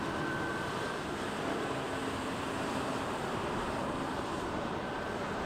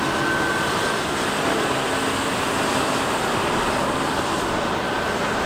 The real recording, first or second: second